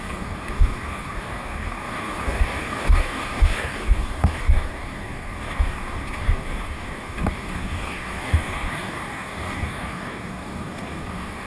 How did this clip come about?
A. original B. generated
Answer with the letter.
B